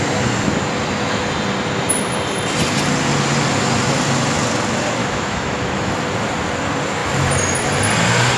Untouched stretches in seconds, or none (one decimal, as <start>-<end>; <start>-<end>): 0.0-5.0; 5.9-8.4